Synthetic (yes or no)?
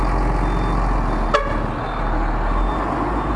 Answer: no